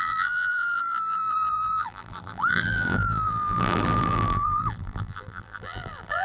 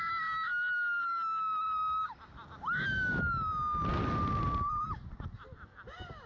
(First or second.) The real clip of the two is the second